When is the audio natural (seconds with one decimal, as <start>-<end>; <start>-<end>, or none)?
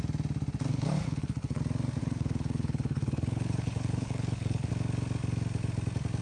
0.0-0.7; 1.6-2.0; 4.7-6.2